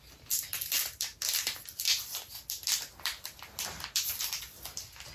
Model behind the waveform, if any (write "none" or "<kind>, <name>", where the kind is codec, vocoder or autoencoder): none